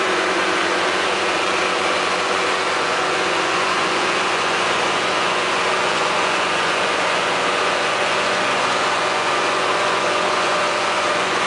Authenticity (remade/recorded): remade